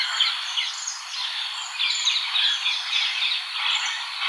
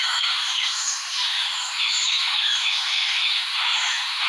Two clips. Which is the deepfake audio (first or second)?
second